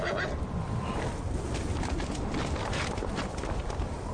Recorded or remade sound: recorded